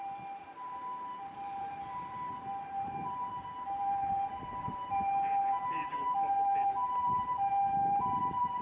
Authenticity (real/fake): fake